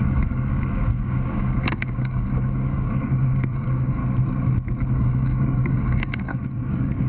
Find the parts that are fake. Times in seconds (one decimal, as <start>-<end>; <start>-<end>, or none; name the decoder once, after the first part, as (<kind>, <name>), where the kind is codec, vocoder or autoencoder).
0.0-4.0 (codec, DAC); 4.9-7.1

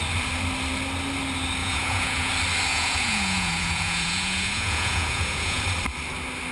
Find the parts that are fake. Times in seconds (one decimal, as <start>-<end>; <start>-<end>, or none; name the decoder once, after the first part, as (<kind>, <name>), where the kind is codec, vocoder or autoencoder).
1.6-2.3 (vocoder, Vocos); 2.7-5.6